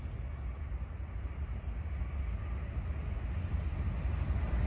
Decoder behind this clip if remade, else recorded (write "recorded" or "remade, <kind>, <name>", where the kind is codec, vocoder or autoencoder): recorded